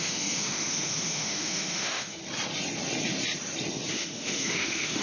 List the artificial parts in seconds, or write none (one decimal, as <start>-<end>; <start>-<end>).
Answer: 0.0-2.2; 3.9-5.0